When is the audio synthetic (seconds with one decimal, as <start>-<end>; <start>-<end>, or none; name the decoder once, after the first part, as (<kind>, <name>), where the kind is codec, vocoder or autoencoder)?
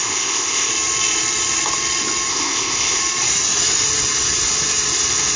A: 0.0-0.7 (codec, ZipCodec); 2.3-3.0